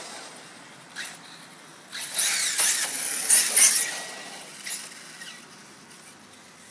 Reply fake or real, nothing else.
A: real